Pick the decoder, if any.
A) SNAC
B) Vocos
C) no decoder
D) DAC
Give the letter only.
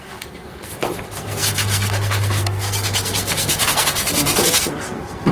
A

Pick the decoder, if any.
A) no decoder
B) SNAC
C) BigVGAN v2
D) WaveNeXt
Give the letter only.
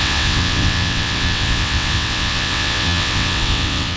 D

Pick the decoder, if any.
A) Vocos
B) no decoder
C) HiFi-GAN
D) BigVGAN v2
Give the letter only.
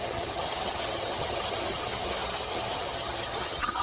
C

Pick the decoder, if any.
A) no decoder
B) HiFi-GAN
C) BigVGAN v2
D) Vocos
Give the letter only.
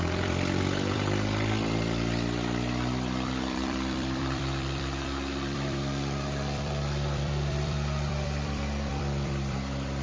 C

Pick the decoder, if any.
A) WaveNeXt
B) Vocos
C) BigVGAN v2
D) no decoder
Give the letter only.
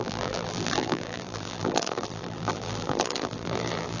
C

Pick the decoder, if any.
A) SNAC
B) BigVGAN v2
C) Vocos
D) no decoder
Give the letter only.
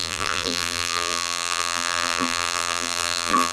B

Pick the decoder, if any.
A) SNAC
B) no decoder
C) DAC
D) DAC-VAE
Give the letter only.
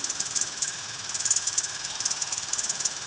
D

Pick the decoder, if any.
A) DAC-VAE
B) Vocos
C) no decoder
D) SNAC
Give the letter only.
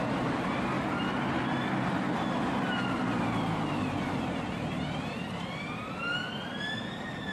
C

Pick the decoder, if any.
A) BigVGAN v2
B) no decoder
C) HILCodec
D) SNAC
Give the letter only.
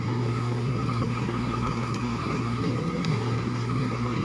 D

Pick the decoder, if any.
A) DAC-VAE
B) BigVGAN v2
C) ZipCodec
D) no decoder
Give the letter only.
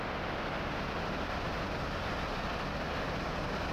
D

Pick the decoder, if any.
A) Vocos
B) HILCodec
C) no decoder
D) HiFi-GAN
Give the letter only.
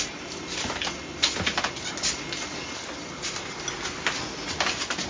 C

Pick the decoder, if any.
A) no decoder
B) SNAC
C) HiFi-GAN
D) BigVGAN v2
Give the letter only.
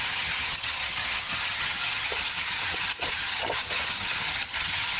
C